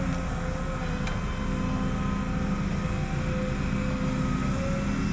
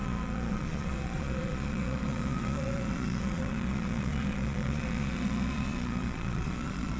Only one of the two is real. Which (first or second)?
first